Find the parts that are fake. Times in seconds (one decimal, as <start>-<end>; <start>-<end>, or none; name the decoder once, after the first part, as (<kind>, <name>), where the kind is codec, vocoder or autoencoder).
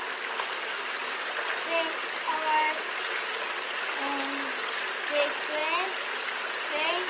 none